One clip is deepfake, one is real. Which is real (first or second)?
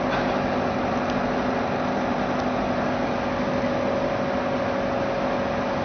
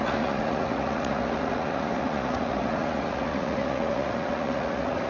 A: first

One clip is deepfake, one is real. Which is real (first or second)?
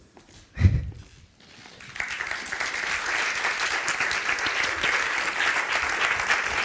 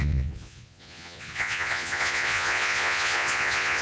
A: first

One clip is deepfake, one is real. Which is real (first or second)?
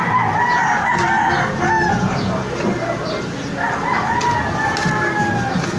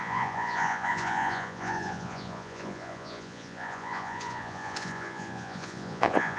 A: first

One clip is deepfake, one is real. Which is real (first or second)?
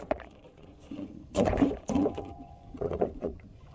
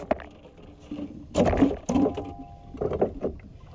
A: second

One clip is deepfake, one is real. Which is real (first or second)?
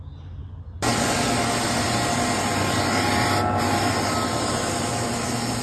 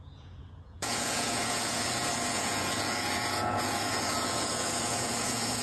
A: first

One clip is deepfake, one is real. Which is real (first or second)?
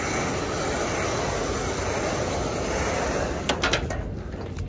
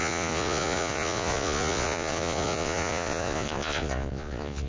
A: first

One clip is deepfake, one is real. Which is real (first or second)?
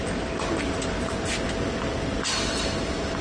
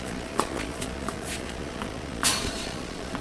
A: first